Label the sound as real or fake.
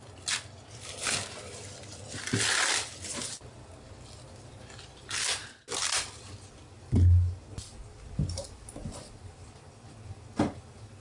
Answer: real